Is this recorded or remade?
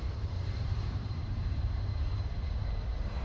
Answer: remade